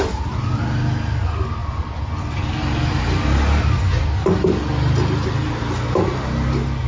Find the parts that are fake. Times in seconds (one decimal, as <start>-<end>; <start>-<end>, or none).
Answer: none